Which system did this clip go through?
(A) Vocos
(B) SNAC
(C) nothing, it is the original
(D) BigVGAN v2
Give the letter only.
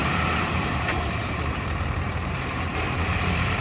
D